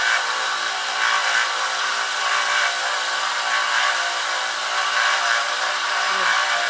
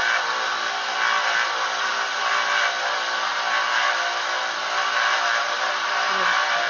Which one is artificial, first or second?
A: first